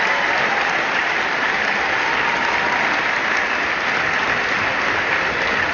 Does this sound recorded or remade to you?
recorded